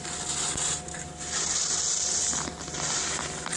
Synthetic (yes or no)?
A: no